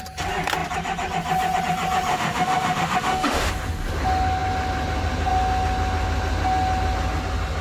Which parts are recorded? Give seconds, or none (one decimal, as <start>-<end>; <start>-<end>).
0.0-2.1; 3.5-7.6